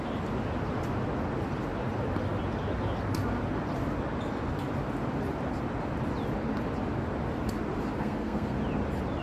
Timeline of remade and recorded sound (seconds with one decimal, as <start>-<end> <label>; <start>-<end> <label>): 0.0-8.0 recorded; 8.0-8.6 remade; 8.6-9.2 recorded